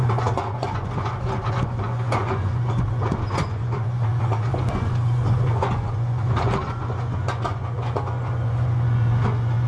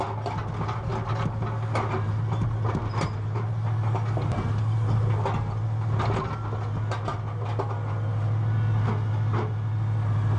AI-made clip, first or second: first